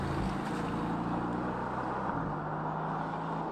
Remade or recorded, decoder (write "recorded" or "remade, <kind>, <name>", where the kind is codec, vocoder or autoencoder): recorded